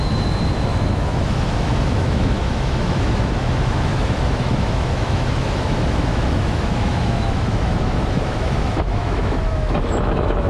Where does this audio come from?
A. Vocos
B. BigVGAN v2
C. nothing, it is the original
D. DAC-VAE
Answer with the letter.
D